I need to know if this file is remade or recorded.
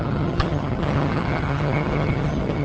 remade